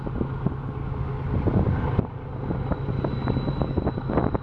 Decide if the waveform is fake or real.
real